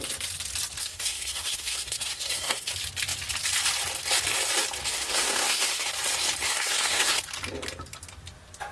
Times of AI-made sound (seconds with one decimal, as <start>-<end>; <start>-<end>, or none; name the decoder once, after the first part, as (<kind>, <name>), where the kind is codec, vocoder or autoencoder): 0.8-2.7 (codec, SNAC); 4.9-5.9; 6.4-7.2